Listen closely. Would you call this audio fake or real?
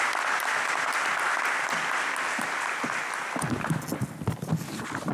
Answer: real